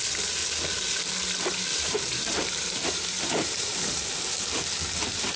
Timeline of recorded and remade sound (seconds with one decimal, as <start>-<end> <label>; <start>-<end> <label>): 0.0-1.7 recorded; 1.7-4.1 remade; 4.1-5.4 recorded